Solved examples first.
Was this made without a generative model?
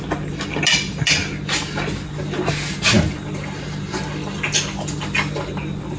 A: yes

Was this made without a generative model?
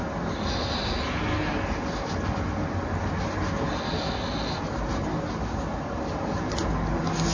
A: yes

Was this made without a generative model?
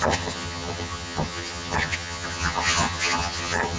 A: no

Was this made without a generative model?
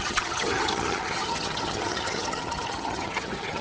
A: no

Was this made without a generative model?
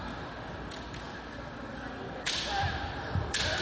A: yes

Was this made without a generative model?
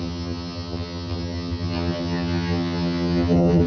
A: no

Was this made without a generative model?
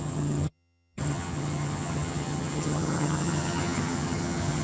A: no